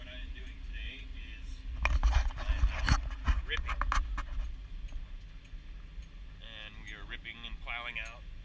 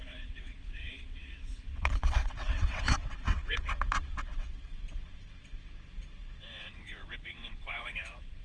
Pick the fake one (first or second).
second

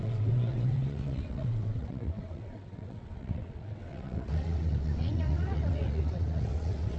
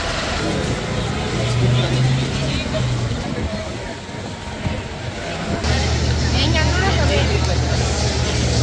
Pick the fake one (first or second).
first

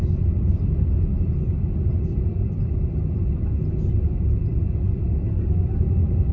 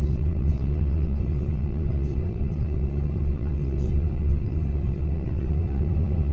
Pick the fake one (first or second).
second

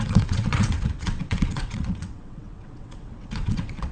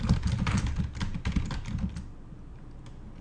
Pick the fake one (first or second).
first